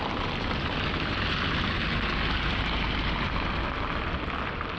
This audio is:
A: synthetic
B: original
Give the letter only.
B